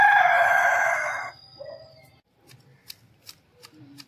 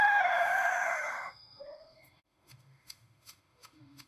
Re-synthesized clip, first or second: second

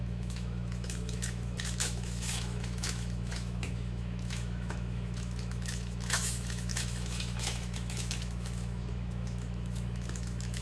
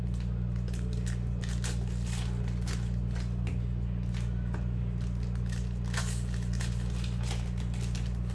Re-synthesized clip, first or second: first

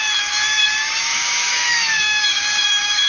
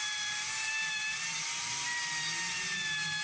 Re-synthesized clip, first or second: first